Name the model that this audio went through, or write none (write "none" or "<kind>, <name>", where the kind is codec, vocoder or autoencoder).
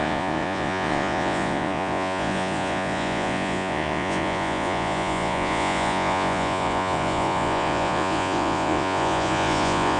vocoder, Vocos